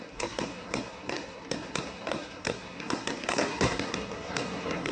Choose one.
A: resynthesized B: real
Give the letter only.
A